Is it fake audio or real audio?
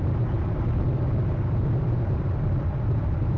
fake